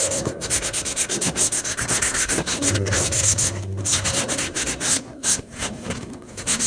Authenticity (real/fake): fake